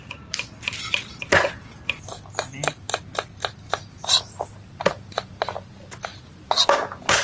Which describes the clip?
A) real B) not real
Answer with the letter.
A